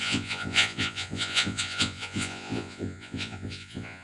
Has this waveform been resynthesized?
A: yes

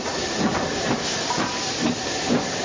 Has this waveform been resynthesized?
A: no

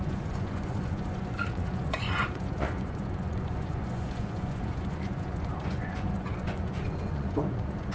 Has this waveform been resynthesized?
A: yes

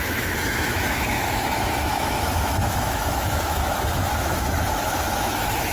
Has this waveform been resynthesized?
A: yes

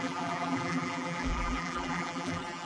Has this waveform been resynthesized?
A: yes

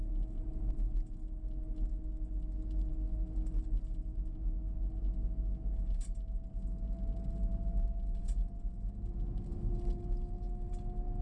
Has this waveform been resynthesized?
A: no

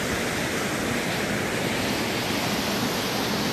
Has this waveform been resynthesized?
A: no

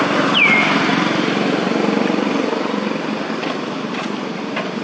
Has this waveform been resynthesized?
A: yes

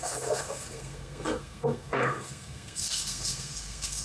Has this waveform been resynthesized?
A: yes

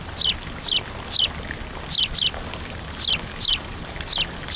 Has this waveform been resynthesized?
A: no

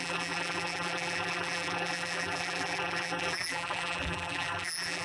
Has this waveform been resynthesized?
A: yes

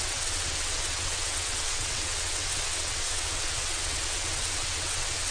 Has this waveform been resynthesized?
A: yes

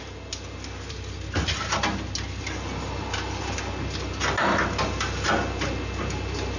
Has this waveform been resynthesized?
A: no